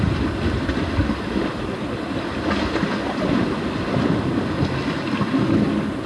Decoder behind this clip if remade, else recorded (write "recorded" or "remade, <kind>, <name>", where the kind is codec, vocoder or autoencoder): recorded